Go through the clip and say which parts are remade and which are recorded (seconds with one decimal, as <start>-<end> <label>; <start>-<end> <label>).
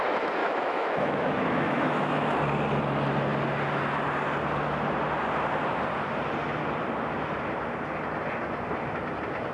0.0-0.4 recorded; 0.4-2.4 remade; 2.4-9.5 recorded